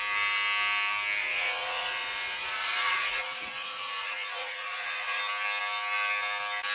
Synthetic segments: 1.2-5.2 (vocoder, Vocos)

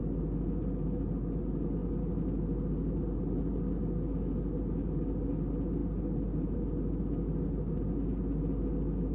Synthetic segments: none